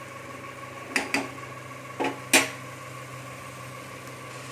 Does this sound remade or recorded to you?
recorded